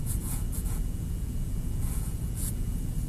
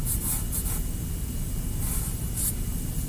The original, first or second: second